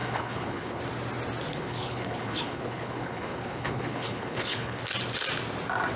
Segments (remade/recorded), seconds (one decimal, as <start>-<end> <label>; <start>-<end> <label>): 0.0-0.8 remade; 0.8-1.5 recorded; 1.5-4.8 remade; 4.8-6.0 recorded